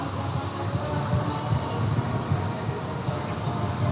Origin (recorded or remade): recorded